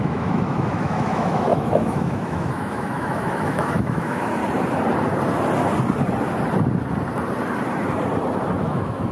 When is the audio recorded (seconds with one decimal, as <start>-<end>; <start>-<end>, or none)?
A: 4.4-8.6